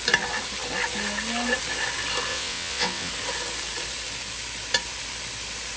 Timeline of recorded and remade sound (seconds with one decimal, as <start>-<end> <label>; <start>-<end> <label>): 0.0-2.3 recorded; 2.3-3.1 remade; 3.1-5.8 recorded